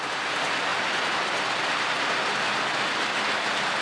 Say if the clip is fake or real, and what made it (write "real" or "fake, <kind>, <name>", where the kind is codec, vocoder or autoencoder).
real